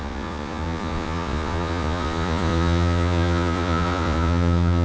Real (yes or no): no